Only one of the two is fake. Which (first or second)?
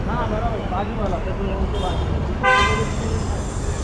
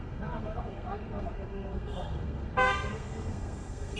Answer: second